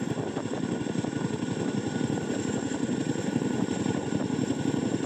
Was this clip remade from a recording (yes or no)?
no